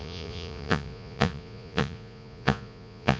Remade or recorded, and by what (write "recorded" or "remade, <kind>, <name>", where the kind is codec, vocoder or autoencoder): remade, vocoder, Vocos